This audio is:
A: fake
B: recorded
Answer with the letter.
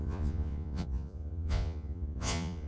A